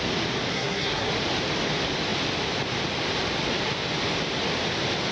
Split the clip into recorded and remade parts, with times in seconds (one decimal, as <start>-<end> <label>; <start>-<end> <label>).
0.0-0.5 recorded; 0.5-1.1 remade; 1.1-5.1 recorded